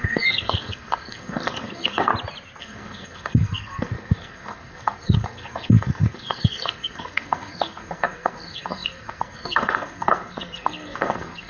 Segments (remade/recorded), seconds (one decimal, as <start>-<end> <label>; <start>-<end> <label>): 0.0-2.1 remade; 2.1-2.6 recorded; 2.6-11.5 remade